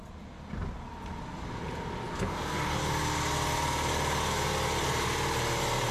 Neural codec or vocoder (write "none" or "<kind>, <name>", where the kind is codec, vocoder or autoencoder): none